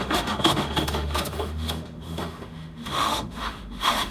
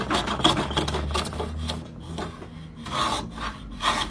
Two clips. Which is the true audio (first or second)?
second